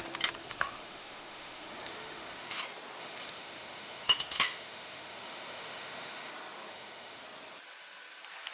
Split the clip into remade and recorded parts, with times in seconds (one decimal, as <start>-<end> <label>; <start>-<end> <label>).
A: 0.0-0.4 recorded; 0.4-2.6 remade; 2.6-3.0 recorded; 3.0-6.3 remade; 6.3-6.7 recorded; 6.7-7.2 remade; 7.2-8.5 recorded